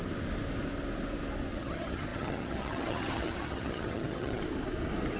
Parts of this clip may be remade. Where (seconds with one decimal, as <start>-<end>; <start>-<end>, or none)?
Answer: 1.6-4.4